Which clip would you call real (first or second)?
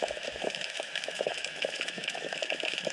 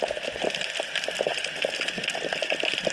second